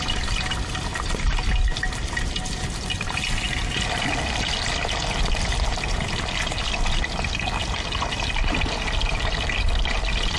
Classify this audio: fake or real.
real